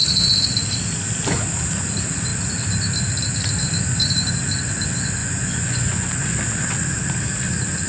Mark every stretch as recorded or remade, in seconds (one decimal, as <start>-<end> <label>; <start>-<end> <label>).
0.0-5.2 recorded; 5.2-6.3 remade; 6.3-7.9 recorded